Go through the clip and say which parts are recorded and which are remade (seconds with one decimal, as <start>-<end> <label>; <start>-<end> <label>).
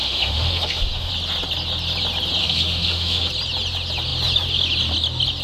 0.0-1.1 remade; 1.1-2.4 recorded; 2.4-3.3 remade; 3.3-5.4 recorded